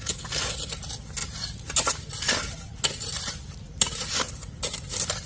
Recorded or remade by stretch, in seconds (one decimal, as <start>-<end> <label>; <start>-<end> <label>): 0.0-5.3 recorded